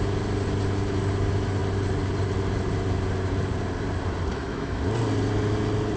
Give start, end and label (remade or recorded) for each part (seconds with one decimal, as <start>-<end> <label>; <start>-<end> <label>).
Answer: 0.0-4.3 recorded; 4.3-4.8 remade; 4.8-6.0 recorded

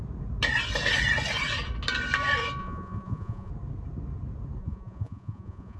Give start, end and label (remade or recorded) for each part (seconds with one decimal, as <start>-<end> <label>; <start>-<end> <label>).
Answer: 0.0-2.6 recorded; 2.6-3.5 remade; 3.5-4.6 recorded; 4.6-5.8 remade

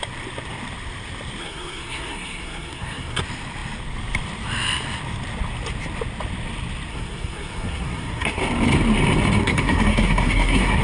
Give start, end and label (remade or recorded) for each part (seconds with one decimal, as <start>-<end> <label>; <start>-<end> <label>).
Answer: 0.0-1.4 recorded; 1.4-3.2 remade; 3.2-6.9 recorded; 6.9-8.4 remade; 8.4-9.4 recorded; 9.4-10.8 remade

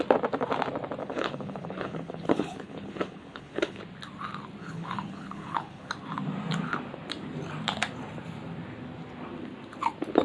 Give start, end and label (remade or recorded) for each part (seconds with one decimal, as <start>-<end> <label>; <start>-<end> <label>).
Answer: 0.0-1.0 recorded; 1.0-3.8 remade; 3.8-4.6 recorded; 4.6-5.9 remade; 5.9-10.2 recorded

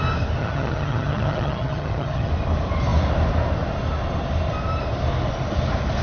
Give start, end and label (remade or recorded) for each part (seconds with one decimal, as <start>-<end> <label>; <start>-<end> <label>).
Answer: 0.0-0.4 recorded; 0.4-2.3 remade; 2.3-6.0 recorded

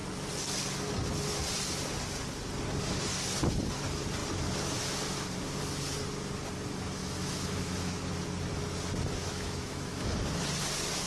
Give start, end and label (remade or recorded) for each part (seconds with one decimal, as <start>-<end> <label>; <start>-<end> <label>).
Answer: 0.0-7.0 recorded; 7.0-8.0 remade; 8.0-9.2 recorded; 9.2-10.1 remade; 10.1-11.1 recorded

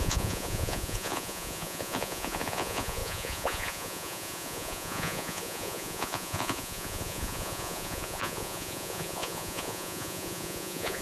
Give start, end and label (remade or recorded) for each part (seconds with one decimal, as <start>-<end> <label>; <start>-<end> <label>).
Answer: 0.0-11.0 remade

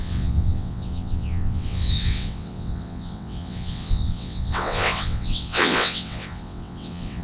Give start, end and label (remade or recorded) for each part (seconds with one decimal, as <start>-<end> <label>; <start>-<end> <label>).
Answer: 0.0-7.2 remade